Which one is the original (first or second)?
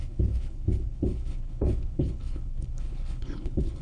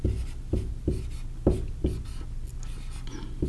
second